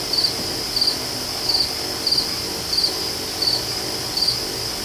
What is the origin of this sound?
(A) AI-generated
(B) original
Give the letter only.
B